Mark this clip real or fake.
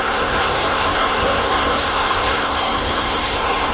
fake